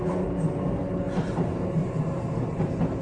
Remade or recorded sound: recorded